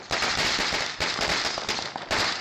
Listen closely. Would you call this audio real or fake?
real